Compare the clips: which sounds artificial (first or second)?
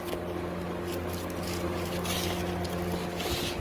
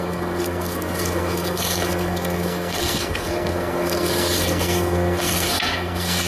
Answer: second